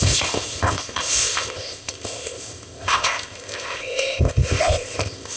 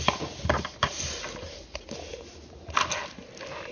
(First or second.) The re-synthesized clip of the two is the first